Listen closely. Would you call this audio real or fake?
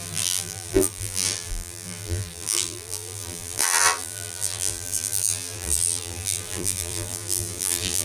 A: fake